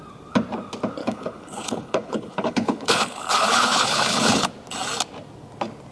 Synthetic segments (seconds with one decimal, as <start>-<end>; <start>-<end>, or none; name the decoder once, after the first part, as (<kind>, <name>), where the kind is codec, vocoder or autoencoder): 1.0-4.5 (codec, HILCodec)